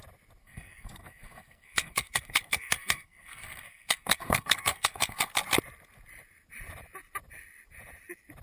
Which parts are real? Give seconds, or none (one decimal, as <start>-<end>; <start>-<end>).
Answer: 0.0-0.4; 5.3-8.4